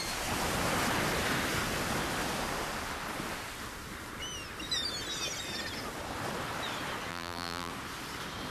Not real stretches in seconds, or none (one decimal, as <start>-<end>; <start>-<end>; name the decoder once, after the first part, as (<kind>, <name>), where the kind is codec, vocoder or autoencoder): 7.1-7.7 (vocoder, BigVGAN v2)